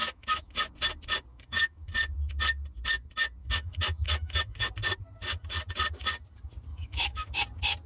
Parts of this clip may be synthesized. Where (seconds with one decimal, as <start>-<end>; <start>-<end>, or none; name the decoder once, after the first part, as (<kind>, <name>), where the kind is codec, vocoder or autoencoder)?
0.0-0.7 (autoencoder, DAC-VAE); 1.3-1.9; 3.4-4.7; 6.7-7.4